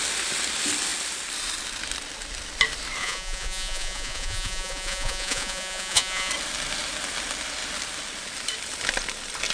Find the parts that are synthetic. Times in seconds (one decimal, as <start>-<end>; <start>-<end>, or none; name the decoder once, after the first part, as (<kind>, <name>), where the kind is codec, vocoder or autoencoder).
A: 3.0-6.3 (vocoder, Vocos)